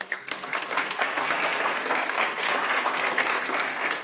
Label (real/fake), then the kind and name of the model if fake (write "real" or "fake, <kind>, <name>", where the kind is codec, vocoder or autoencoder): fake, codec, SNAC